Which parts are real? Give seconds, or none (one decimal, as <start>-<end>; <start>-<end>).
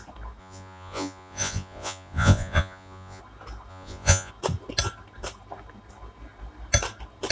0.0-0.4; 3.2-3.7; 4.3-7.3